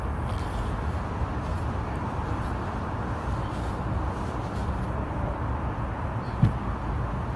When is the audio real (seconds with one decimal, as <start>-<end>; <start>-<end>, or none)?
0.0-1.5; 5.7-7.4